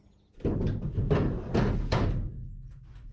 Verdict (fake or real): real